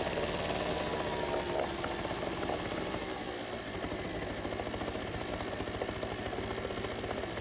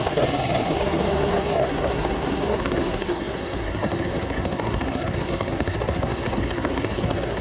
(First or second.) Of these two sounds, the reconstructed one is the second